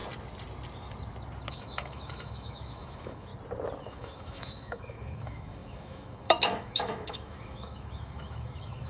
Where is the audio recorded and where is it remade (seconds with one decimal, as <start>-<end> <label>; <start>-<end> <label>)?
0.0-1.5 recorded; 1.5-3.3 remade; 3.3-3.8 recorded; 3.8-8.9 remade